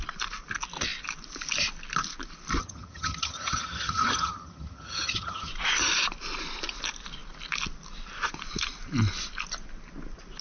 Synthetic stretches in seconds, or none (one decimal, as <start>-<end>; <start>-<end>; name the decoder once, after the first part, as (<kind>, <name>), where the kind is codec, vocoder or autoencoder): 2.6-5.5 (vocoder, HiFi-GAN)